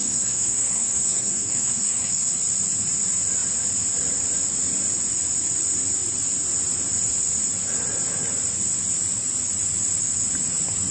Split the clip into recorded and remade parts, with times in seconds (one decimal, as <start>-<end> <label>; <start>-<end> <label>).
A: 0.0-2.3 remade; 2.3-10.9 recorded